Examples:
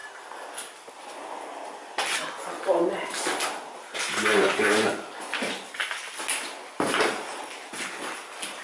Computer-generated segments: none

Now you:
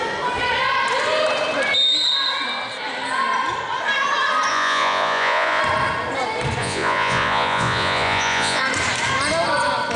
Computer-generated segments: 4.5-5.6; 6.6-8.6

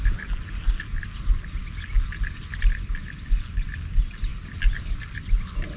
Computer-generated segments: none

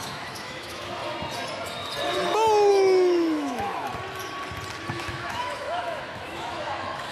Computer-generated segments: 0.0-1.0; 2.7-3.9; 4.9-7.1